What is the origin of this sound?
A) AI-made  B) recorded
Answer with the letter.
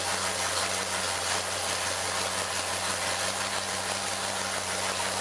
B